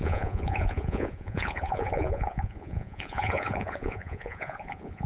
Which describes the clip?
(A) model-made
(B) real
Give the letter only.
A